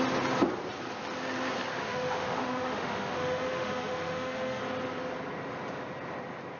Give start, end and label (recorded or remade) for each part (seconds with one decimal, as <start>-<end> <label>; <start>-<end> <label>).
0.0-1.7 recorded; 1.7-4.6 remade; 4.6-6.6 recorded